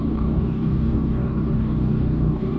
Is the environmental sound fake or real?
fake